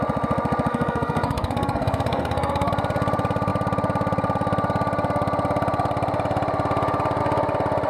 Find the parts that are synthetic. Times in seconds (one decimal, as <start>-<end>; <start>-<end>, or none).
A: 0.7-2.7